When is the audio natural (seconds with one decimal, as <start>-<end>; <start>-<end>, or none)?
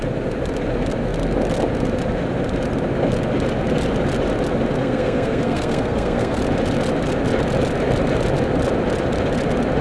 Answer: 0.0-4.8; 6.4-9.8